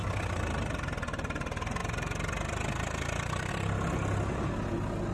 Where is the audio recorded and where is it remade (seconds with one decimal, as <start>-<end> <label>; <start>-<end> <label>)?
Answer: 0.0-5.1 recorded